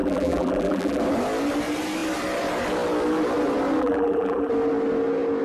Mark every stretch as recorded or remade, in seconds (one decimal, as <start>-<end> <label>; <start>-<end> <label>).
0.0-1.0 remade; 1.0-3.8 recorded; 3.8-4.5 remade; 4.5-5.4 recorded